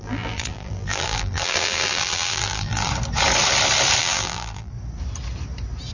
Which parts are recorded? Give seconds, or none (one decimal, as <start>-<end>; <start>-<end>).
2.9-4.0; 4.7-5.9